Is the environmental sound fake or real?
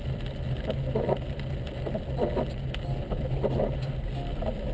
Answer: real